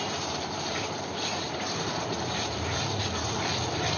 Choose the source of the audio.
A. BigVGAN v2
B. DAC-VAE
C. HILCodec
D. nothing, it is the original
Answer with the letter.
A